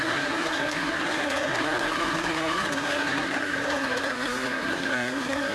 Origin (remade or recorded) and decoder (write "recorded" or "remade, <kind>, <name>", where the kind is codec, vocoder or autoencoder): remade, codec, SNAC